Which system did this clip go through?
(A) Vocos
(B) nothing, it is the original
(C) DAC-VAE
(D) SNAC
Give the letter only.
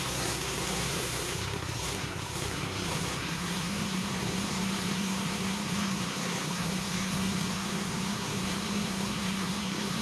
D